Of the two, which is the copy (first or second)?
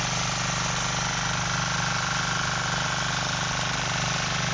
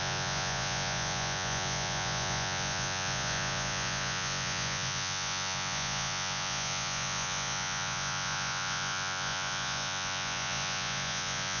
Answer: second